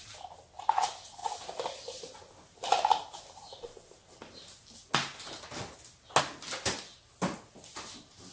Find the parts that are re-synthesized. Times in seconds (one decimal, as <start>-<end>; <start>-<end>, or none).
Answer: none